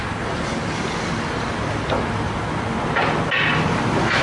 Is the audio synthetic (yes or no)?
no